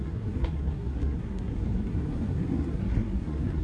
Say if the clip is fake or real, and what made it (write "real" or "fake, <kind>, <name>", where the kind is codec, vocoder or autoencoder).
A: fake, codec, SNAC